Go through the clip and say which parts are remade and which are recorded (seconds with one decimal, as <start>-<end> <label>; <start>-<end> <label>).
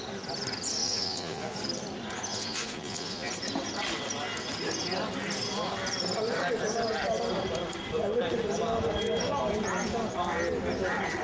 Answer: 0.0-0.8 recorded; 0.8-1.6 remade; 1.6-2.3 recorded; 2.3-3.3 remade; 3.3-11.2 recorded